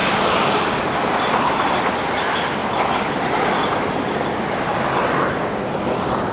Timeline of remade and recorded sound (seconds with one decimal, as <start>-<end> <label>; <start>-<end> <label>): 0.0-0.8 remade; 0.8-6.3 recorded